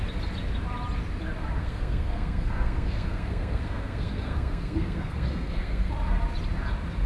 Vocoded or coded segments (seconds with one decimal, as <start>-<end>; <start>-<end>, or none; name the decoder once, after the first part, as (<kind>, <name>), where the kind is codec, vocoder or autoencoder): 1.6-5.9 (codec, SNAC)